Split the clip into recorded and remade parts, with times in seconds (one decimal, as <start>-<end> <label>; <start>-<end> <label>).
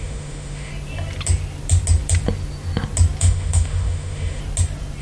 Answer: 0.0-0.7 remade; 0.7-3.2 recorded; 3.2-4.4 remade; 4.4-5.0 recorded